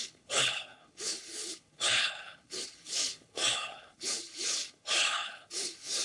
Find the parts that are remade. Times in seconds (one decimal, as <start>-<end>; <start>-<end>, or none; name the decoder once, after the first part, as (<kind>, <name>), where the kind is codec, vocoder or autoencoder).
0.0-6.0 (codec, HILCodec)